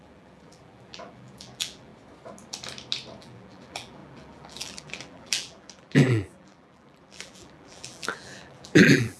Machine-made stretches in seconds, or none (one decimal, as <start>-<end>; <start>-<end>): 0.0-1.9; 3.2-9.2

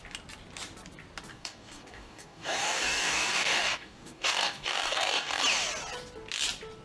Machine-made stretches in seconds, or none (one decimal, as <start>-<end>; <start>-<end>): 1.3-5.4

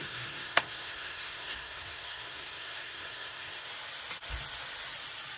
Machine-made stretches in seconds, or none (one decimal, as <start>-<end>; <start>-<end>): 0.0-3.7

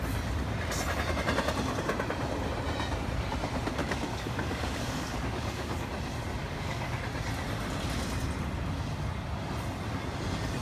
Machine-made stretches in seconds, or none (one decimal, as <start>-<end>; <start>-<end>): 3.8-5.9; 6.4-7.0

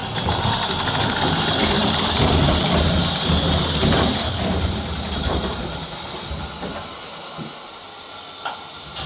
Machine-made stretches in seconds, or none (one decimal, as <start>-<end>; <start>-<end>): 1.8-5.6